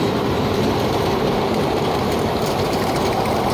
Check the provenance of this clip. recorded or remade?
remade